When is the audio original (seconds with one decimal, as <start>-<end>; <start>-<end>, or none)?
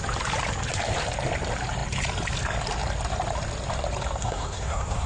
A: 0.0-4.2